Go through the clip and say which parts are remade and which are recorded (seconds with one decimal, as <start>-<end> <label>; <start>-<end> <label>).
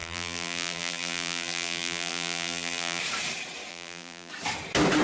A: 0.0-3.0 remade; 3.0-3.7 recorded; 3.7-4.3 remade; 4.3-5.0 recorded